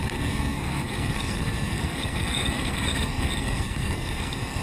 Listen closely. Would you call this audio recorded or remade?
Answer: remade